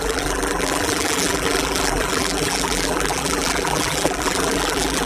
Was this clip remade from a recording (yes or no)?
yes